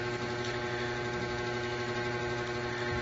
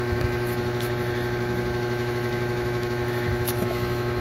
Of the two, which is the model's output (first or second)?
second